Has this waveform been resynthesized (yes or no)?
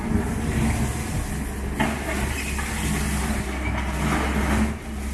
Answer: no